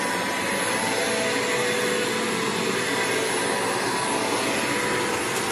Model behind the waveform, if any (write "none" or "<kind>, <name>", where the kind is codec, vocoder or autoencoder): none